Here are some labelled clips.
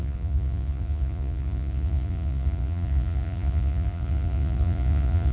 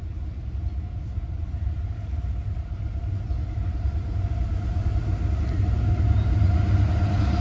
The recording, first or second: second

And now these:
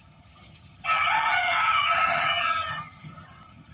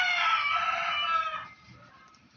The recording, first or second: second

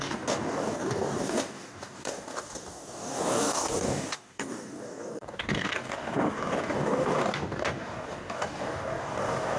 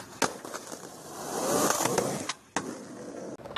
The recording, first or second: second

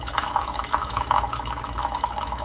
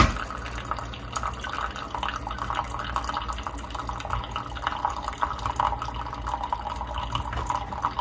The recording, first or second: second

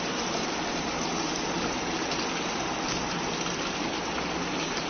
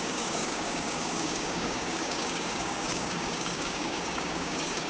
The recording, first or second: first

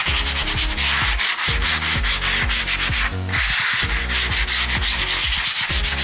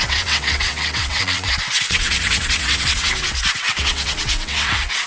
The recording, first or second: first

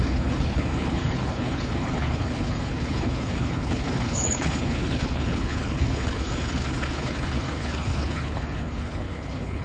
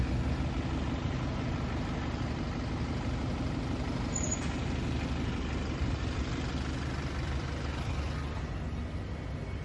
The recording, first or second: second